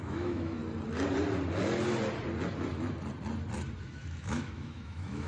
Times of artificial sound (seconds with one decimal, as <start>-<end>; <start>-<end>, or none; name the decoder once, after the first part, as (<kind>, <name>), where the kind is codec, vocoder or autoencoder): 0.0-0.6 (autoencoder, DAC-VAE); 3.8-5.3